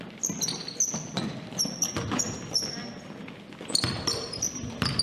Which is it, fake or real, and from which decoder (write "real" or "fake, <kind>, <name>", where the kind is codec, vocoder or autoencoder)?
real